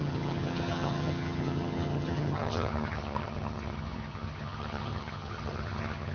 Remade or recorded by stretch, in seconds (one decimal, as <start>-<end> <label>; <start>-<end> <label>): 0.0-6.1 remade